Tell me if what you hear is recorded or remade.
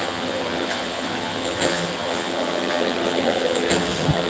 remade